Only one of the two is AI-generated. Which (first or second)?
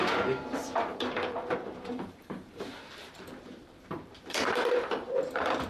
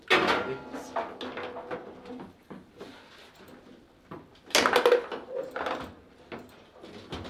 first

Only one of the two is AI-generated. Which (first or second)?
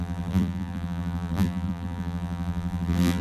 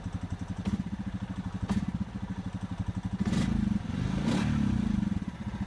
first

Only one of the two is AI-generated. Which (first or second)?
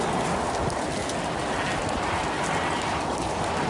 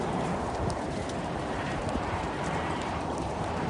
second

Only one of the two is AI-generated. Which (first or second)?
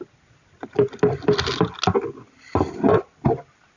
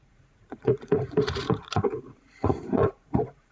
second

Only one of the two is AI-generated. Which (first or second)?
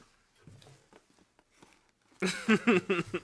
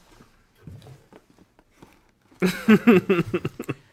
second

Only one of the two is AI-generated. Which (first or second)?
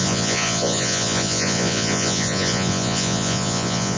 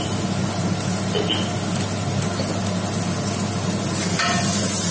first